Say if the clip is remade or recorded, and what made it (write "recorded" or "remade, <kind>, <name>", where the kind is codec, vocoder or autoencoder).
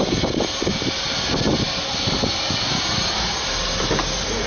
recorded